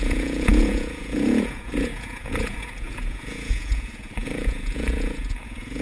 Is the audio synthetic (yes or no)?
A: yes